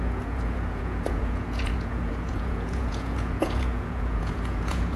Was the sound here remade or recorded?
remade